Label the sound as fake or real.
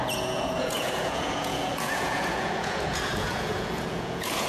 fake